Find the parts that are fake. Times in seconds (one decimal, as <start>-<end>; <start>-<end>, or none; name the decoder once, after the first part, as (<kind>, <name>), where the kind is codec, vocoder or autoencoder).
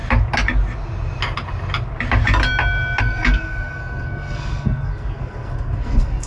3.0-6.3 (codec, SNAC)